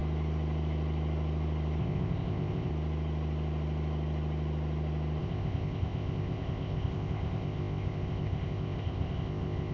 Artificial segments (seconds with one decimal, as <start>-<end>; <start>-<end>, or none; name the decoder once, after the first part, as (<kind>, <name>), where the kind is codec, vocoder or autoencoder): 1.8-2.7 (codec, ZipCodec); 5.2-9.7